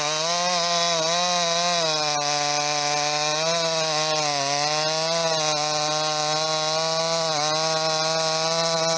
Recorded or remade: recorded